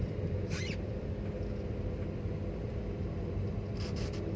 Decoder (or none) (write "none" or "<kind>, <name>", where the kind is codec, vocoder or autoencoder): vocoder, BigVGAN v2